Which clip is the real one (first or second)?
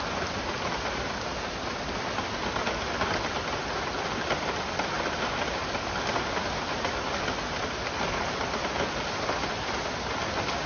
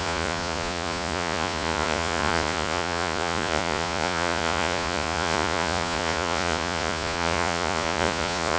first